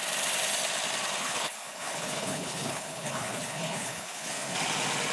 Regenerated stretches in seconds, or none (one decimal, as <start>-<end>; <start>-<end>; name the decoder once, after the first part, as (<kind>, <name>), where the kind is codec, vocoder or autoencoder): 1.2-4.3 (codec, HILCodec)